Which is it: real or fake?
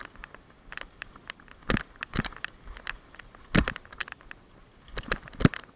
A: real